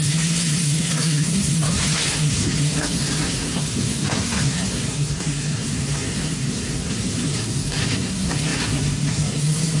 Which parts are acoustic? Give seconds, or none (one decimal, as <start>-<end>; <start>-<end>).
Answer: none